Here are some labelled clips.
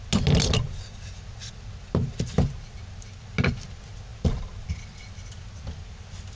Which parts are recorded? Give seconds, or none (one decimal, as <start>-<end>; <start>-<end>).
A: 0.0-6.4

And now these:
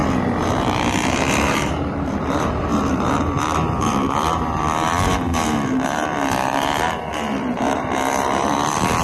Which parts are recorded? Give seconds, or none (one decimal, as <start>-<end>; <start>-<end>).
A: none

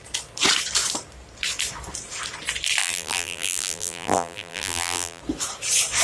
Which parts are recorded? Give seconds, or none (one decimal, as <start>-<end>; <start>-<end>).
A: 0.0-2.8; 5.2-6.0